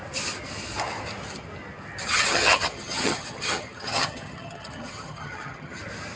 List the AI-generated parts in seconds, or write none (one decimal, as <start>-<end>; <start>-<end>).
2.1-5.8